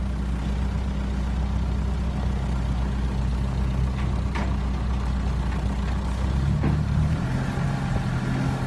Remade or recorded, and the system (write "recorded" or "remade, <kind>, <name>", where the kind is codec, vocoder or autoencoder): recorded